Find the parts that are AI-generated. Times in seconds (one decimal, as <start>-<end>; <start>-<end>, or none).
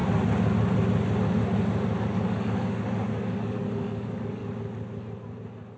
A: 2.0-4.4